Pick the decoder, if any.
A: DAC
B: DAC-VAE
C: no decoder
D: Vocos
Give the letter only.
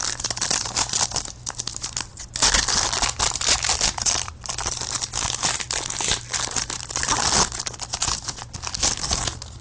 C